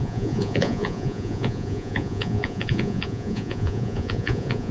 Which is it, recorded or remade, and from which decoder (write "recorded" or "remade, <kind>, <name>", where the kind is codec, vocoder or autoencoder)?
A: remade, vocoder, Vocos